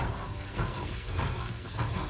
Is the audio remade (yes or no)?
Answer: yes